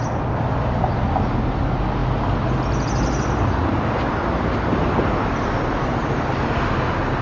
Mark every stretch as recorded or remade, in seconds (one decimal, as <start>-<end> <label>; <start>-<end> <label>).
0.0-7.2 recorded